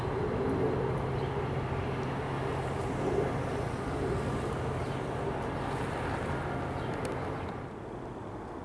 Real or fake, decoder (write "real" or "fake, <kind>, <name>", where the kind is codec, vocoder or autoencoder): real